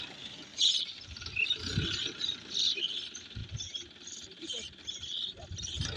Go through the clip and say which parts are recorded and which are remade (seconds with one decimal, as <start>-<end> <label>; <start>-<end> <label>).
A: 0.0-0.5 recorded; 0.5-1.3 remade; 1.3-3.4 recorded; 3.4-4.8 remade; 4.8-6.0 recorded